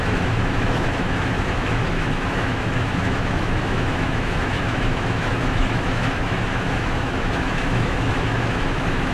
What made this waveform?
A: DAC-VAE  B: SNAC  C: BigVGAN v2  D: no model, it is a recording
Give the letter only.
A